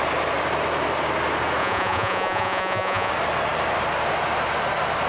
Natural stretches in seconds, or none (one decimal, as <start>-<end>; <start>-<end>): 0.0-1.6; 3.1-5.1